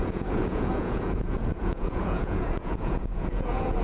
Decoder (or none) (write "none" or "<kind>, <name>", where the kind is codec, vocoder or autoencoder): vocoder, Vocos